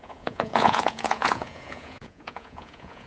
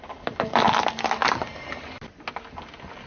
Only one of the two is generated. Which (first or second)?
first